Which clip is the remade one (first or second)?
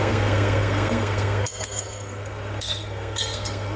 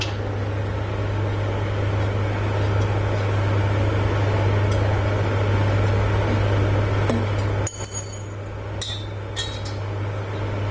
first